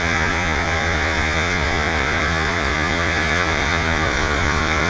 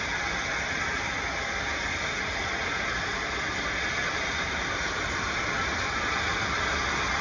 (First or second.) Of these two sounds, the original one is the second